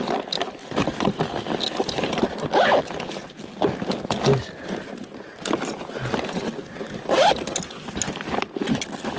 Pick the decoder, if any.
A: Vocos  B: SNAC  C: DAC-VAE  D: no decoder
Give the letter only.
D